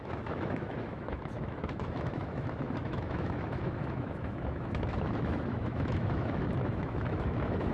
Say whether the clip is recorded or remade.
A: remade